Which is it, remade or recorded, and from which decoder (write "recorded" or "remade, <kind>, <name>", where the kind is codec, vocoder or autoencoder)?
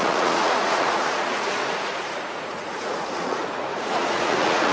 remade, vocoder, Vocos